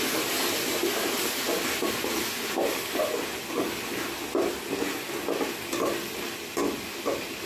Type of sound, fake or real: real